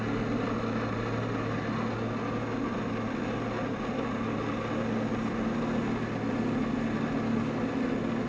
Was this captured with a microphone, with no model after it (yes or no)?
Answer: yes